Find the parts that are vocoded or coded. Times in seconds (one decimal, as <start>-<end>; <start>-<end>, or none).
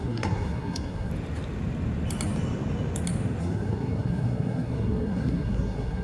0.0-1.1; 3.4-6.0